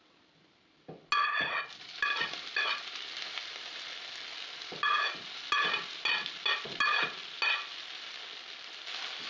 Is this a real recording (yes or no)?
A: yes